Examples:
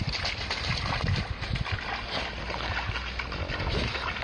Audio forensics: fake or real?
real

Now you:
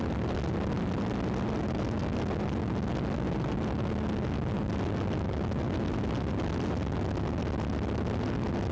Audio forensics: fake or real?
real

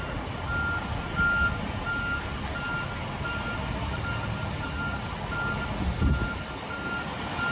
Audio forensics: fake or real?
real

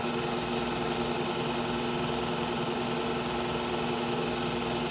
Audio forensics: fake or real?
real